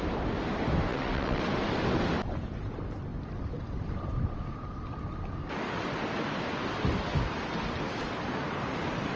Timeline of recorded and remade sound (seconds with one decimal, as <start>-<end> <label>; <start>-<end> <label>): 0.0-0.9 recorded; 0.9-1.4 remade; 1.4-9.2 recorded